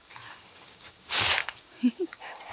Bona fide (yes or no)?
no